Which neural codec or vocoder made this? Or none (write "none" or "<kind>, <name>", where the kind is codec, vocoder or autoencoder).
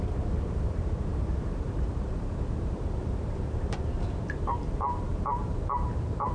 vocoder, BigVGAN v2